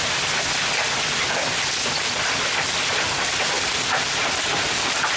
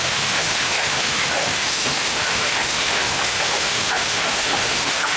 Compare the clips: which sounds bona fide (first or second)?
first